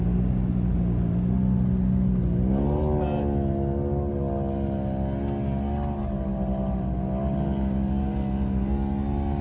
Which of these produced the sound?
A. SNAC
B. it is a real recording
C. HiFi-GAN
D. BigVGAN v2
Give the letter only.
B